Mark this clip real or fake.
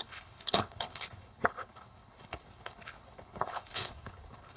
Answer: fake